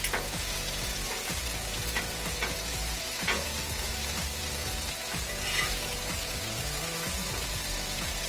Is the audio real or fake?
fake